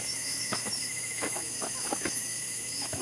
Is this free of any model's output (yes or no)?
no